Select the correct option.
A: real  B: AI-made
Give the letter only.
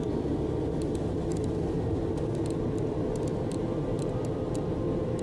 A